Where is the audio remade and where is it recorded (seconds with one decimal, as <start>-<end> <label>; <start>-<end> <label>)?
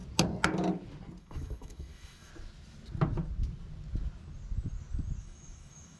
0.0-1.2 recorded; 1.2-2.3 remade; 2.3-5.2 recorded; 5.2-6.0 remade